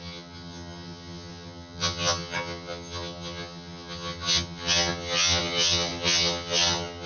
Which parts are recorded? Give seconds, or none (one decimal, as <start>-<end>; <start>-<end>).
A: none